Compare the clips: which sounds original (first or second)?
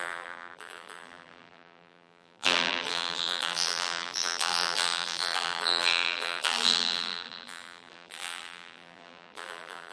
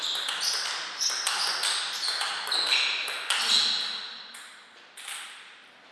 second